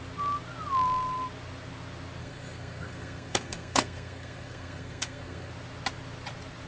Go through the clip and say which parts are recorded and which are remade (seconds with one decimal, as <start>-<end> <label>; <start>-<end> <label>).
0.0-2.2 recorded; 2.2-5.5 remade; 5.5-6.7 recorded